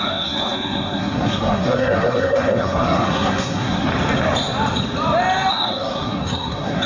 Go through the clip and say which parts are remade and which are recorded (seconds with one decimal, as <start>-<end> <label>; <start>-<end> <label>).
0.0-3.9 remade; 3.9-5.5 recorded; 5.5-6.9 remade